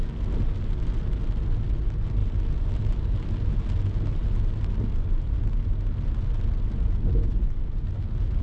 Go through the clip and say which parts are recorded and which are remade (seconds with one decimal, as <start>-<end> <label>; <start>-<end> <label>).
0.0-8.4 recorded